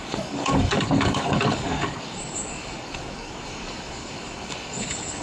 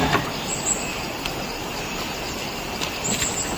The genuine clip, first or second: second